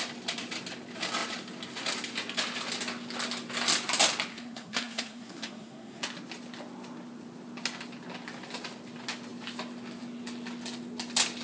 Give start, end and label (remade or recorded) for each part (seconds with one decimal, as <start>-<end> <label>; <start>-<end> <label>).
0.0-4.3 recorded; 4.3-6.0 remade; 6.0-11.4 recorded